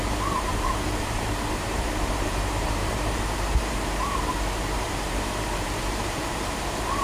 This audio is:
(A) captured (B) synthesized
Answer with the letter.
B